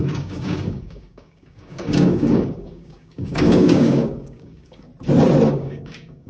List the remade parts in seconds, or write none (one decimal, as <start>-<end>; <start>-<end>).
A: 0.0-4.9; 5.5-6.3